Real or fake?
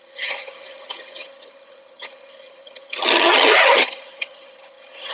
fake